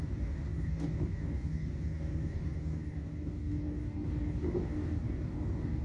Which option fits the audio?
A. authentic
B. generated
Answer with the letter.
B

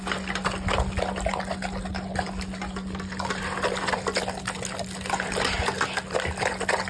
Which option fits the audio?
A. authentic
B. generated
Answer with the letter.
A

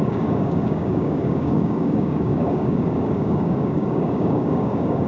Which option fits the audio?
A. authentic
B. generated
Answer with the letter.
B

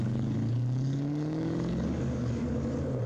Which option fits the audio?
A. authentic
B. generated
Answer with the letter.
B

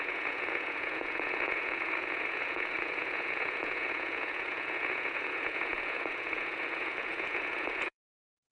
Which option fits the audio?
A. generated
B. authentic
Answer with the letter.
A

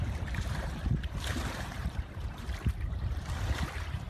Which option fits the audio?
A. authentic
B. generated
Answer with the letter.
B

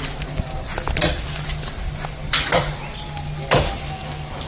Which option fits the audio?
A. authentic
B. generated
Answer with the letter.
A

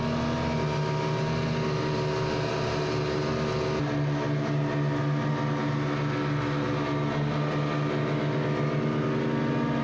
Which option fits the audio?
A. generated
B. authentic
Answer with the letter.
B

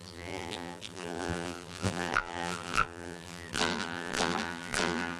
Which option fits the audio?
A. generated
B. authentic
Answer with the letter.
A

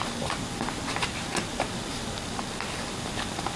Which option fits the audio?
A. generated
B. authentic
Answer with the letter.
A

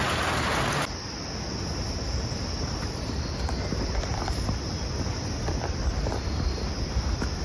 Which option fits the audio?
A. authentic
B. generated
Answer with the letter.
A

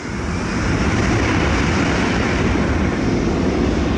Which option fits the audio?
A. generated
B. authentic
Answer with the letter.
B